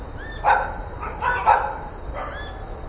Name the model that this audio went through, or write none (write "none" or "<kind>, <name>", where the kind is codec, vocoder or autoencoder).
none